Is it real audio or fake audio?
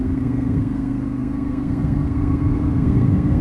fake